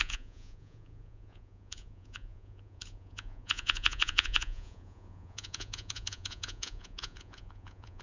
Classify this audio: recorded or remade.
remade